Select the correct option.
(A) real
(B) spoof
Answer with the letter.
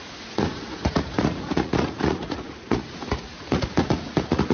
B